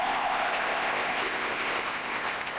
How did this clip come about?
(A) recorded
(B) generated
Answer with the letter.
B